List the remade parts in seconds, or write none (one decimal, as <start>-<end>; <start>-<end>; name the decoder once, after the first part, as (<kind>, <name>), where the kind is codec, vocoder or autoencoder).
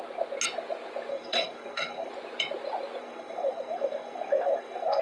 1.1-2.1 (codec, SNAC); 3.0-5.0